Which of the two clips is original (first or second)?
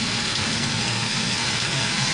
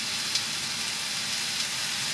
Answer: second